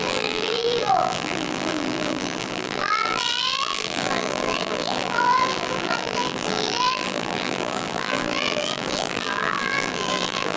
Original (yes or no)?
no